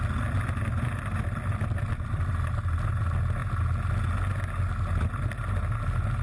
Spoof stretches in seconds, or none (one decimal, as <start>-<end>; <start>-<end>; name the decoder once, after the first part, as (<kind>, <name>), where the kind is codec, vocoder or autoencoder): none